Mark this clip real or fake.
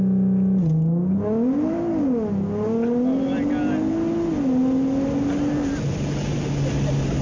real